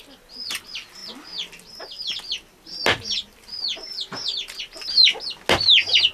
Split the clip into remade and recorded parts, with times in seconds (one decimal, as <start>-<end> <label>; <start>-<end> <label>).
0.0-6.1 recorded